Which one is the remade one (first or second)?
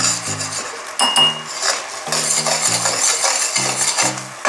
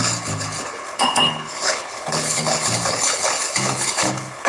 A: second